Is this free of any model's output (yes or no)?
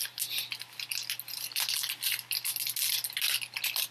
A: yes